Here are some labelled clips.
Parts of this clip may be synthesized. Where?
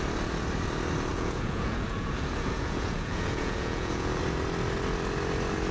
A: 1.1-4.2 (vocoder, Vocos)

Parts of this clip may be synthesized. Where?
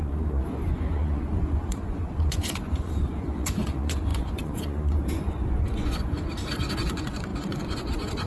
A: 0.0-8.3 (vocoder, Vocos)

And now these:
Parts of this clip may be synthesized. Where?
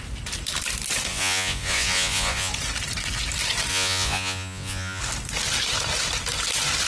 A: 1.1-2.5 (vocoder, Vocos); 3.7-5.0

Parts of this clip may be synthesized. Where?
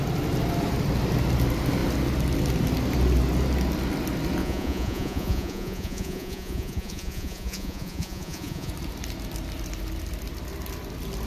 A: 4.4-8.7 (vocoder, Vocos)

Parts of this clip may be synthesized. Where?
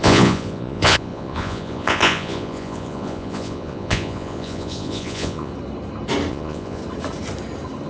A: 0.0-5.5 (vocoder, Vocos); 6.3-6.8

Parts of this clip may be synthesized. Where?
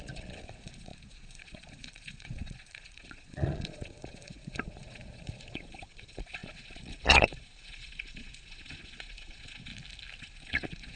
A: 0.0-9.7 (vocoder, Vocos); 10.2-11.0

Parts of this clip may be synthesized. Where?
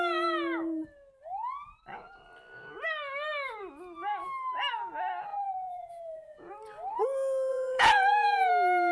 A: 5.3-6.5 (vocoder, Vocos); 7.5-8.5